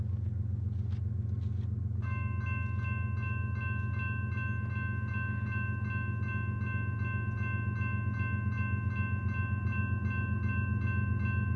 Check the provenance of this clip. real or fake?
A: real